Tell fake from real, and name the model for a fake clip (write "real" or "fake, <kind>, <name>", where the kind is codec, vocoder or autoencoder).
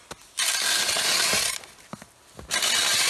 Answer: real